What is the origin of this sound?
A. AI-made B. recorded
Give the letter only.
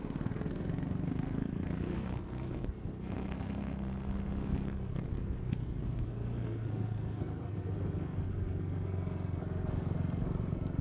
A